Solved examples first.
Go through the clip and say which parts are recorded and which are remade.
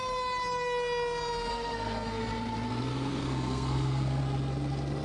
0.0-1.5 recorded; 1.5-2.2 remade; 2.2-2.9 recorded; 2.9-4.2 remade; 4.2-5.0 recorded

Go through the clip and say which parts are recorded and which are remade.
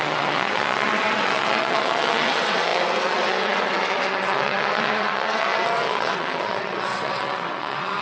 0.0-8.0 remade